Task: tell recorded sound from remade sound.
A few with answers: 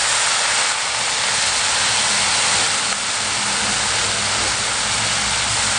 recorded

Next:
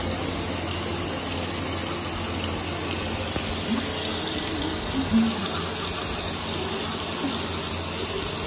recorded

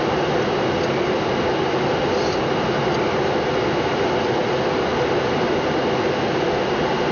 recorded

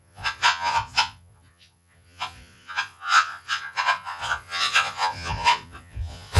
remade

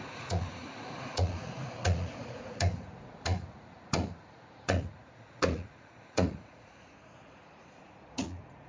remade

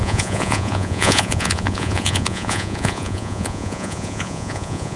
remade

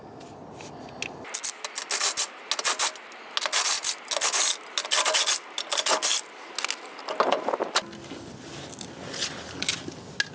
recorded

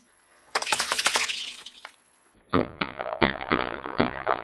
remade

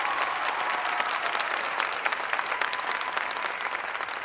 recorded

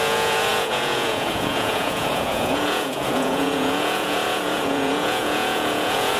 remade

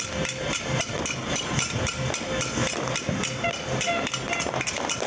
recorded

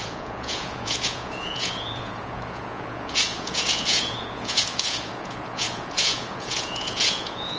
remade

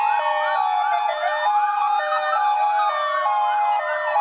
recorded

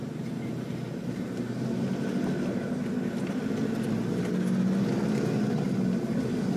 recorded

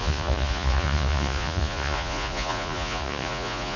remade